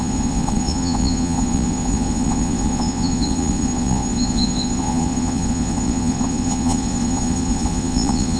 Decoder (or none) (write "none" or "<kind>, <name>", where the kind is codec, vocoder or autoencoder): vocoder, Vocos